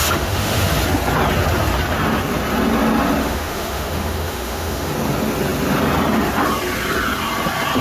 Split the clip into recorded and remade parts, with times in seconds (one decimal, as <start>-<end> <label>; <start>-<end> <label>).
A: 0.0-0.7 remade; 0.7-3.2 recorded; 3.2-4.9 remade; 4.9-7.8 recorded